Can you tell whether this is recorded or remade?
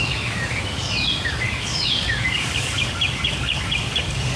remade